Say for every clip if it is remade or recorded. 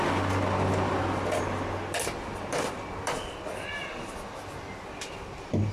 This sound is recorded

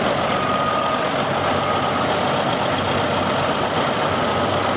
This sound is recorded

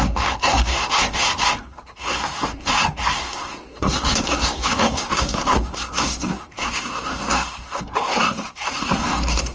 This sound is remade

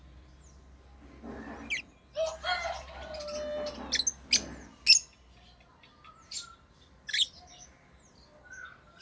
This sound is recorded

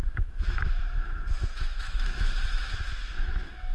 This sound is remade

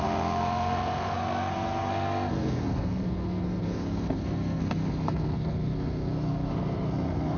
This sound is remade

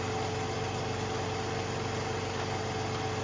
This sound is recorded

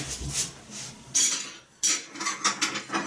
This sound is recorded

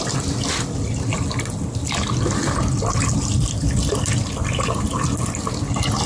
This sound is recorded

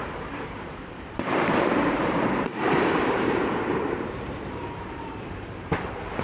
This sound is remade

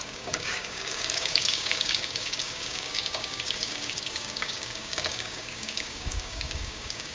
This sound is remade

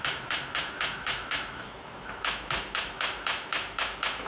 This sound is remade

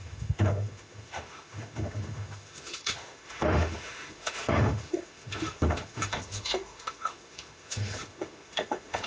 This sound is remade